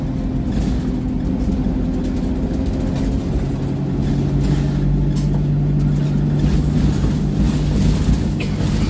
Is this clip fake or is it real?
real